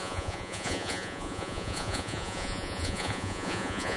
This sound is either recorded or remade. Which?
remade